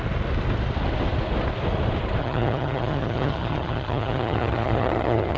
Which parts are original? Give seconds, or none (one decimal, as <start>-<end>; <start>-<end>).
0.0-2.2